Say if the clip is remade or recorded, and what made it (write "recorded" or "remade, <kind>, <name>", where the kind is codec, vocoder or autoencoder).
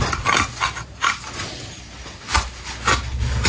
recorded